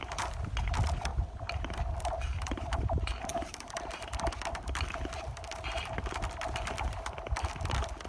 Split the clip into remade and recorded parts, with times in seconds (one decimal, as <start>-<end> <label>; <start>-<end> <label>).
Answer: 0.0-2.2 recorded; 2.2-2.8 remade; 2.8-3.3 recorded; 3.3-4.1 remade; 4.1-8.1 recorded